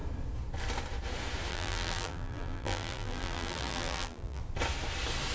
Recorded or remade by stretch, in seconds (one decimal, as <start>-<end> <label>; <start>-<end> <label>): 0.0-1.5 recorded; 1.5-4.4 remade; 4.4-5.3 recorded